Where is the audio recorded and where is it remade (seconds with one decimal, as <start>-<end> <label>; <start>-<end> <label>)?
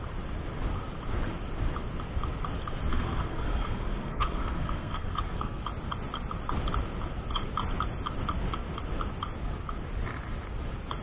0.0-2.9 recorded; 2.9-5.6 remade; 5.6-11.0 recorded